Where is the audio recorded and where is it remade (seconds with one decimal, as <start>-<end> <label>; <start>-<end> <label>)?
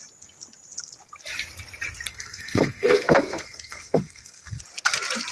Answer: 0.0-2.1 recorded; 2.1-4.6 remade; 4.6-5.3 recorded